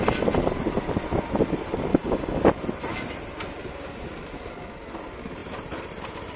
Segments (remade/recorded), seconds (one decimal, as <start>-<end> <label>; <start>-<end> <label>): 0.0-1.9 recorded; 1.9-2.4 remade; 2.4-6.4 recorded